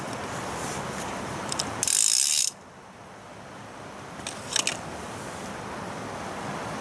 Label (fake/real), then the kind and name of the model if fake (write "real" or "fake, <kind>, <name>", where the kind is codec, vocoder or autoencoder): real